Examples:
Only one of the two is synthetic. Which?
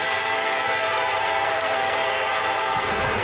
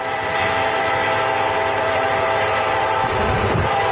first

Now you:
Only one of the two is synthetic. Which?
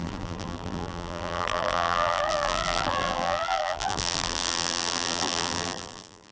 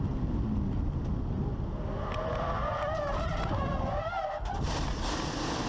first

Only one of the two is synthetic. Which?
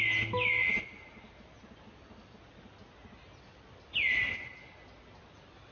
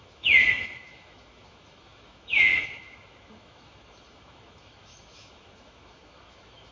second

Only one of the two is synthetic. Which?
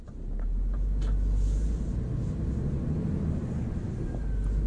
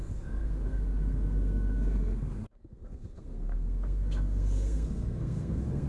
second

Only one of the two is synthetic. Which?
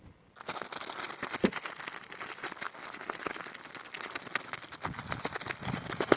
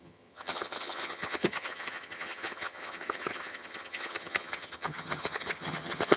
second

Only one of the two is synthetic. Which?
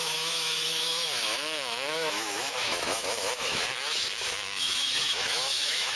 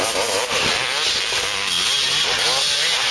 first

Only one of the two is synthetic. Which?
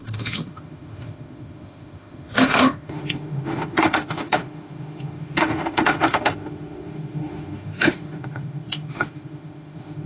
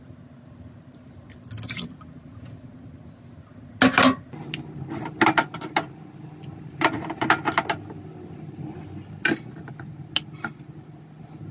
first